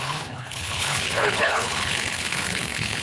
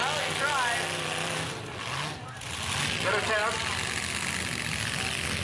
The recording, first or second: second